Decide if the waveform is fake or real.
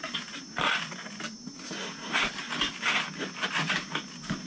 real